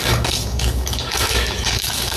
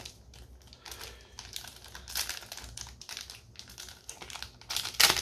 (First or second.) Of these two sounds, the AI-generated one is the first